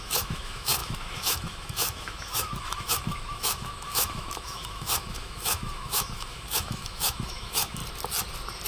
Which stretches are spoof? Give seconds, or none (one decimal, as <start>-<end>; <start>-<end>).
0.0-7.8